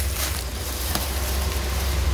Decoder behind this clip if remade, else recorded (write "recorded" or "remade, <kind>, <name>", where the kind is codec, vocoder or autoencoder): remade, vocoder, BigVGAN v2